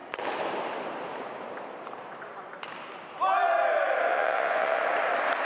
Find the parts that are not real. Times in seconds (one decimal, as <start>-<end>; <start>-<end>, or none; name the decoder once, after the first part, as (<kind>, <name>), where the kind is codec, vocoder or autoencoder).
4.1-4.8 (vocoder, Vocos)